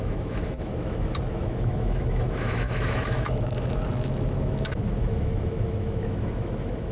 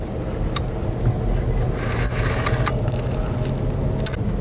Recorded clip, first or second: second